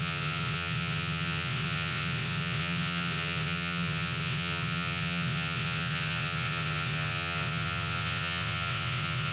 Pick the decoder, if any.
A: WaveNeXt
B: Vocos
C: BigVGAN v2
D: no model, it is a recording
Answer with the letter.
A